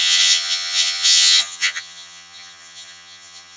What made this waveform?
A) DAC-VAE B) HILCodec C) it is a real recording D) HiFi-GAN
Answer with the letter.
D